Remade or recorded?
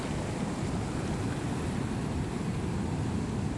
recorded